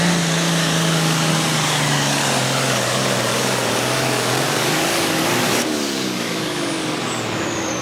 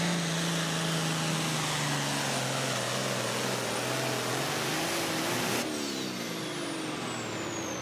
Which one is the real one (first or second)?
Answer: second